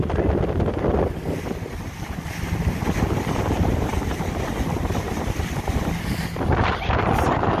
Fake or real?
real